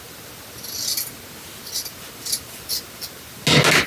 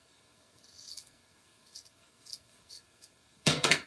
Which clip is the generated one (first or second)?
second